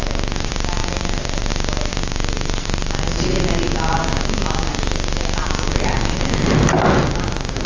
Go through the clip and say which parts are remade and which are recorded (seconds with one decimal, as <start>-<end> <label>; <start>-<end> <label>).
0.0-0.8 recorded; 0.8-1.5 remade; 1.5-2.0 recorded; 2.0-3.5 remade; 3.5-5.4 recorded; 5.4-6.7 remade; 6.7-7.7 recorded